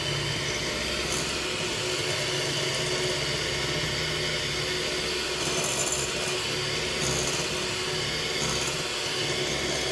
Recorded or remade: recorded